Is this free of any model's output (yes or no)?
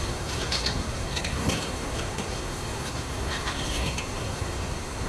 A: no